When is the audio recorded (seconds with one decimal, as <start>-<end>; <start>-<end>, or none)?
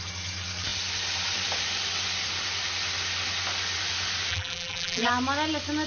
0.0-4.3; 5.1-5.9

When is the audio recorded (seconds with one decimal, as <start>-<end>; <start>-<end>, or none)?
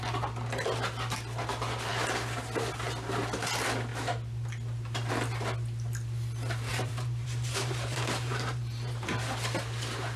0.0-6.7; 9.1-10.2